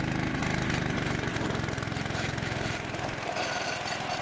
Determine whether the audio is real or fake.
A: real